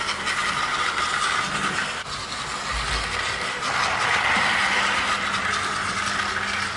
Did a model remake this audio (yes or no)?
no